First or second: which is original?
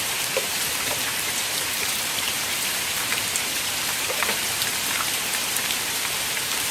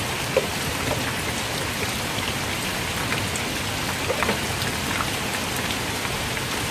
second